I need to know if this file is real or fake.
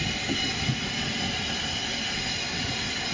real